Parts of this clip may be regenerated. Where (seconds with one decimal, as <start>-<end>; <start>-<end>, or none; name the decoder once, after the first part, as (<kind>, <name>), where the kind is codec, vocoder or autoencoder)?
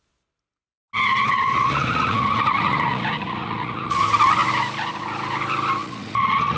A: 1.3-4.0 (vocoder, Vocos); 5.8-6.6